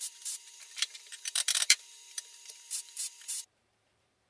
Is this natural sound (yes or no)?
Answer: no